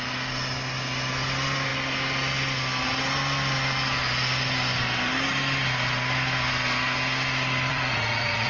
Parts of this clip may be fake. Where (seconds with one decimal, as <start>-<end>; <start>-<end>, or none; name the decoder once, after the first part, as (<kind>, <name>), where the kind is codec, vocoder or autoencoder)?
7.7-8.5 (vocoder, Vocos)

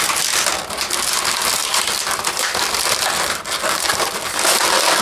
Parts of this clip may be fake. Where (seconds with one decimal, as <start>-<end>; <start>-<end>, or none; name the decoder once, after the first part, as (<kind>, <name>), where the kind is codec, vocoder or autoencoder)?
1.6-4.6 (vocoder, BigVGAN v2)

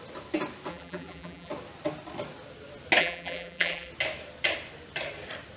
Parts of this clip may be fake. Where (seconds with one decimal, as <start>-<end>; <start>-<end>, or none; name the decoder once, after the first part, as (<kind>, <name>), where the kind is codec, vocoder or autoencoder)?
0.7-1.5 (vocoder, BigVGAN v2); 3.0-3.9